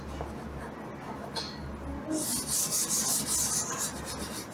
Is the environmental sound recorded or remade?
recorded